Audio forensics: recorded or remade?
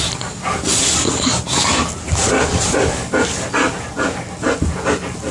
recorded